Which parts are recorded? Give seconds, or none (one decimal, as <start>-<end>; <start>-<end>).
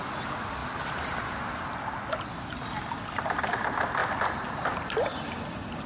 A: 0.0-5.9